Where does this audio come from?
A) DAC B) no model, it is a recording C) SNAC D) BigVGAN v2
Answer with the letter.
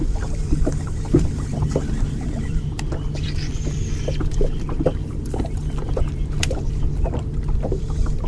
D